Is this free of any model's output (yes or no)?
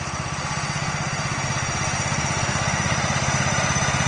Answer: yes